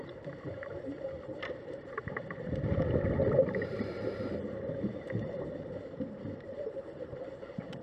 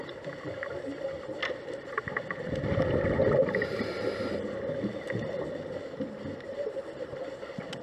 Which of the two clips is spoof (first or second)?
first